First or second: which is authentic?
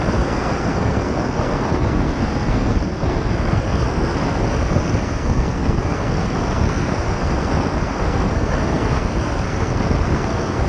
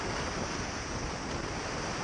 second